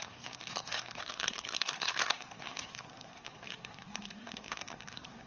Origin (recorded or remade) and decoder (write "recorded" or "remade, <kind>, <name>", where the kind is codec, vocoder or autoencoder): remade, codec, SNAC